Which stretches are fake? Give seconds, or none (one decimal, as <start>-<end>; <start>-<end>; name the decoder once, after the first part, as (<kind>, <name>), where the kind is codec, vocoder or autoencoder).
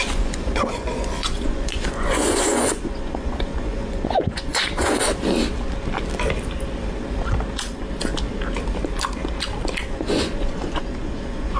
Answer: 0.0-5.1 (vocoder, Vocos); 9.9-11.6